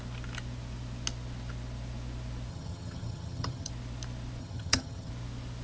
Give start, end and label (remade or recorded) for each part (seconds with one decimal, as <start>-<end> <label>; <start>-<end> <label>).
0.0-2.5 recorded; 2.5-3.7 remade; 3.7-4.4 recorded; 4.4-5.1 remade; 5.1-5.6 recorded